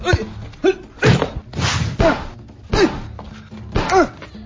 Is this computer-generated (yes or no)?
no